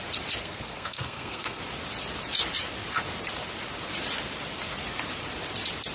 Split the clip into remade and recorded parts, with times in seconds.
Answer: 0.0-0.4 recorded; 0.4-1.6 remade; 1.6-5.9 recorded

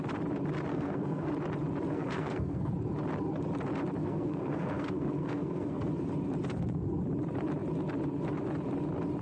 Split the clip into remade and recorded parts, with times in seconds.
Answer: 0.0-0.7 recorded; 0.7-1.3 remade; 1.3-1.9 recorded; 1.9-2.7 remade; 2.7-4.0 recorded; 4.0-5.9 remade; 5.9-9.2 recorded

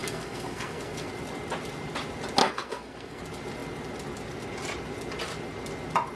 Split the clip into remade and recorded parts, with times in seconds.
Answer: 0.0-1.1 remade; 1.1-2.4 recorded; 2.4-3.2 remade; 3.2-6.2 recorded

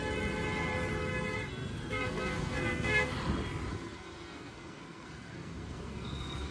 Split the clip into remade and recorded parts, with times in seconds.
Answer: 0.0-1.5 recorded; 1.5-3.1 remade; 3.1-3.7 recorded; 3.7-6.5 remade

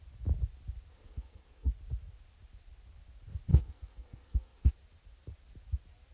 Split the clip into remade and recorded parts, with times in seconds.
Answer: 0.0-0.9 recorded; 0.9-1.7 remade; 1.7-3.5 recorded; 3.5-4.7 remade; 4.7-6.1 recorded

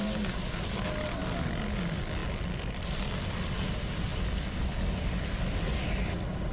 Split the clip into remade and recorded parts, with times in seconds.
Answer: 0.0-6.5 recorded

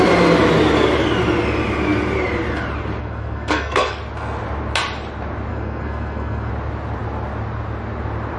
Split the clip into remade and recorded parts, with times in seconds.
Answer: 0.0-3.0 recorded; 3.0-4.0 remade; 4.0-5.5 recorded; 5.5-6.5 remade; 6.5-8.4 recorded

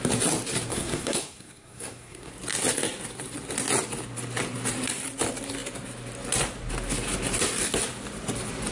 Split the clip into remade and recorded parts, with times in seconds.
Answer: 0.0-0.7 recorded; 0.7-2.3 remade; 2.3-8.7 recorded